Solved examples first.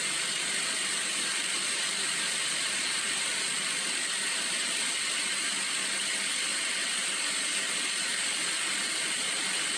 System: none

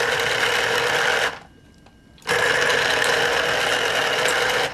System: vocoder, BigVGAN v2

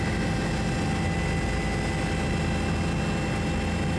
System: none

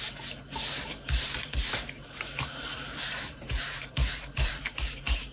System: vocoder, BigVGAN v2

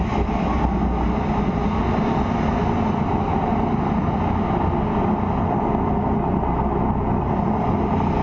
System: none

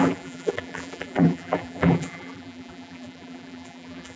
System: vocoder, BigVGAN v2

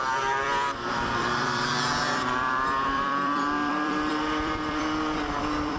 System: vocoder, BigVGAN v2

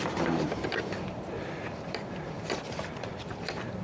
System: vocoder, BigVGAN v2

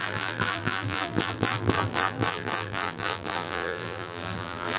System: vocoder, BigVGAN v2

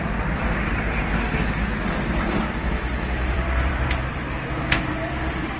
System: vocoder, BigVGAN v2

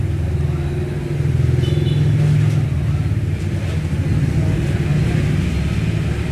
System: none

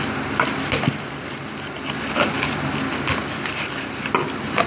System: none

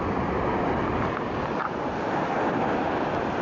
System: none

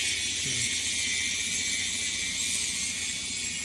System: none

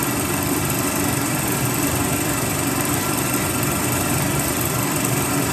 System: vocoder, BigVGAN v2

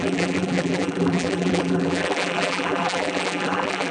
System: vocoder, BigVGAN v2